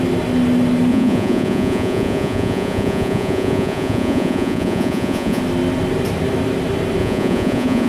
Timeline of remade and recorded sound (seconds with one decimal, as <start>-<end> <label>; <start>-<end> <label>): 0.0-0.9 recorded; 0.9-5.4 remade; 5.4-7.0 recorded; 7.0-7.9 remade